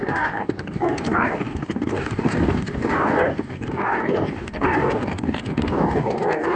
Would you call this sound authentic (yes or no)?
no